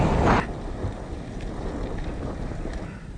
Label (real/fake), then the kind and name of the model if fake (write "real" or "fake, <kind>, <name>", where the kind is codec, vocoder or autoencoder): real